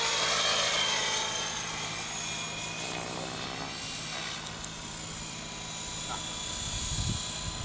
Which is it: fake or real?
real